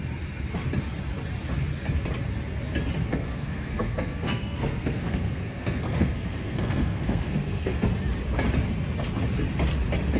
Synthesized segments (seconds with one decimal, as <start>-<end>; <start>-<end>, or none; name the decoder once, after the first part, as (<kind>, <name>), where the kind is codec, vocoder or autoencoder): 3.1-7.9 (codec, SNAC)

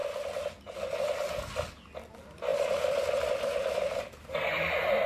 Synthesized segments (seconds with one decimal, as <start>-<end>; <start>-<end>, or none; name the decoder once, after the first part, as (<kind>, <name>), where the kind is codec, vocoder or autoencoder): none

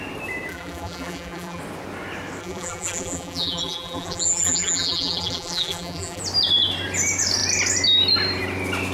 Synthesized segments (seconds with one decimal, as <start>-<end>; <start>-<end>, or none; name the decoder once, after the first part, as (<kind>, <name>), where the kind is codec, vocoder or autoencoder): 0.5-1.6 (vocoder, BigVGAN v2); 2.4-6.2